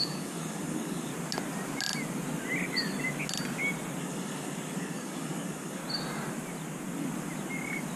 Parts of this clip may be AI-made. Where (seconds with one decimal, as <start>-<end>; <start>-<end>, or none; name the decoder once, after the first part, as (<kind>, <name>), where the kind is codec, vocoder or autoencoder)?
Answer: 0.0-1.1 (codec, DAC); 4.0-5.8